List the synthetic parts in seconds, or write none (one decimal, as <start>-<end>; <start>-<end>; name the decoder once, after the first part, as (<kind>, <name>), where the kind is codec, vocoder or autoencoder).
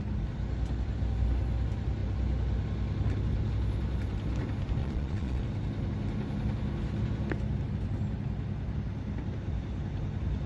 4.8-5.4 (vocoder, Vocos)